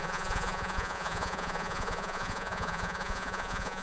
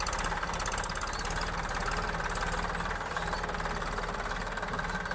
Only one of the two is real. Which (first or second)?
second